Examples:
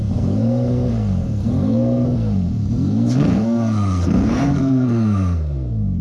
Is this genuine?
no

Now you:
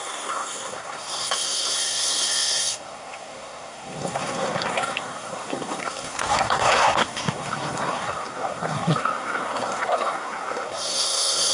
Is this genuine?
no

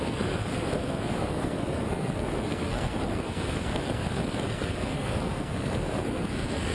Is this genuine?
no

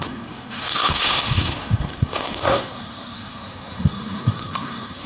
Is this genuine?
no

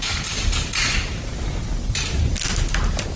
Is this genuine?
yes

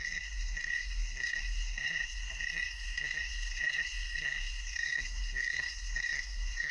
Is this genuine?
no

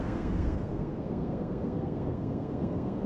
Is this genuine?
no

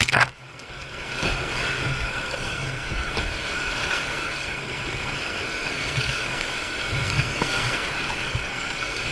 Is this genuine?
no